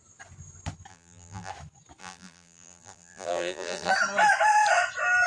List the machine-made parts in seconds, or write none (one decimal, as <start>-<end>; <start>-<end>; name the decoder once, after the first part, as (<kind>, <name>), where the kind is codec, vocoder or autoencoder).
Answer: 0.9-1.5 (vocoder, BigVGAN v2); 2.0-3.9